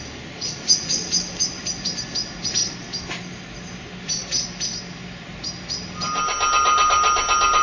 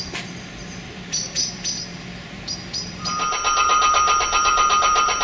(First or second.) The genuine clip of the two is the first